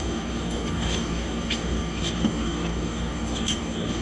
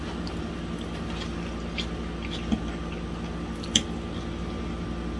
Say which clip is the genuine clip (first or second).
second